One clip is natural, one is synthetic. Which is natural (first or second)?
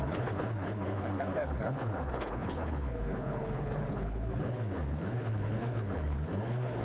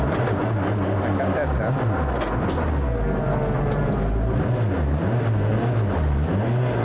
second